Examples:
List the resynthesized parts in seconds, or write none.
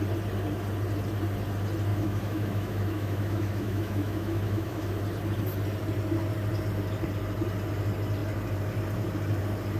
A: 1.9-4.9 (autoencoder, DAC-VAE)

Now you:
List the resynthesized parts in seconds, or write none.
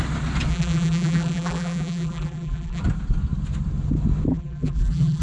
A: 0.5-2.8 (vocoder, BigVGAN v2); 4.3-5.2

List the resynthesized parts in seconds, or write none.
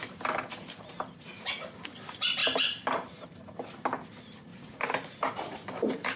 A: 2.4-3.1 (vocoder, BigVGAN v2); 4.5-5.3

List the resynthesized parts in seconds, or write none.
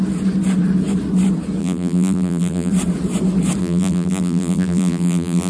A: 1.6-2.7 (vocoder, BigVGAN v2); 3.6-5.5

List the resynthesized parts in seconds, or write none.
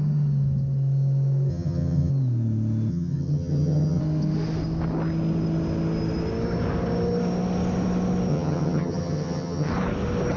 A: 1.5-2.1 (vocoder, HiFi-GAN); 2.9-4.0; 8.3-9.7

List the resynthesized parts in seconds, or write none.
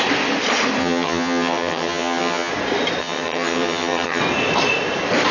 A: 0.8-2.5 (vocoder, HiFi-GAN); 3.0-4.2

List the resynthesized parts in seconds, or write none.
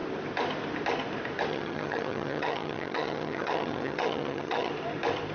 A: 1.5-4.7 (vocoder, HiFi-GAN)